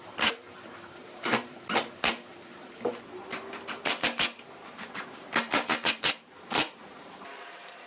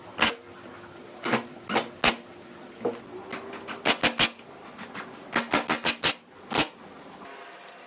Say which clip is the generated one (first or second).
first